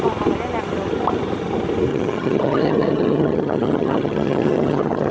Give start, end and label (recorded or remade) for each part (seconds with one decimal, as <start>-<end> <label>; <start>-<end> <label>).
0.0-1.9 recorded; 1.9-5.1 remade